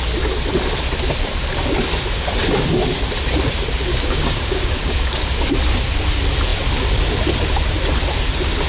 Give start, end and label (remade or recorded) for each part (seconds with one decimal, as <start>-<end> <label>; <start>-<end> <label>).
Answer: 0.0-3.9 recorded; 3.9-5.5 remade; 5.5-8.7 recorded